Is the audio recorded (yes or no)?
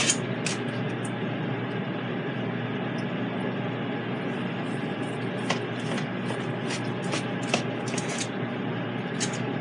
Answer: yes